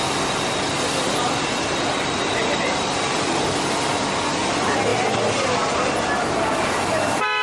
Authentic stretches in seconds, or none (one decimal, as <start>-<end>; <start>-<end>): 0.0-7.4